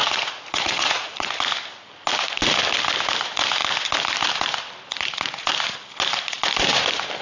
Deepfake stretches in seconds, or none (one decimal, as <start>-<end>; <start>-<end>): 0.0-1.3